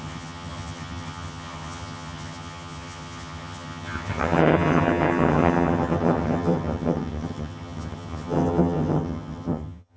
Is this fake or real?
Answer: fake